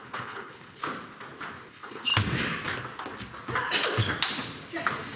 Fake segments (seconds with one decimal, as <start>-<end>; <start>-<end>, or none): 0.0-0.8; 1.7-2.1

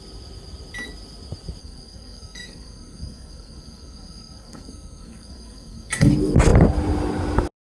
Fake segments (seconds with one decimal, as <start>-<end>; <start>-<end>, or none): 1.6-6.1

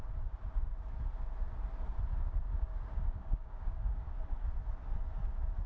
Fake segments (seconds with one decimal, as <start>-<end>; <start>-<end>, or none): 2.5-4.2

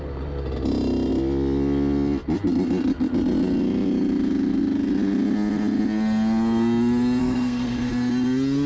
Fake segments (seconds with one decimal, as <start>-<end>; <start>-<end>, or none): 7.2-7.9

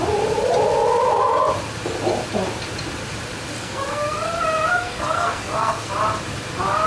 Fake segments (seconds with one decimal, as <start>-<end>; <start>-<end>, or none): 3.6-4.3; 4.7-5.9

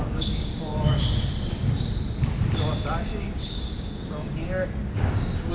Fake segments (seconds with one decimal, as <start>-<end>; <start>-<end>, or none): 0.0-0.7; 3.2-5.5

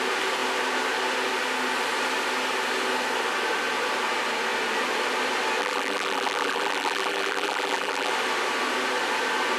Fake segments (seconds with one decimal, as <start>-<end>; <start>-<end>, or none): 5.6-8.1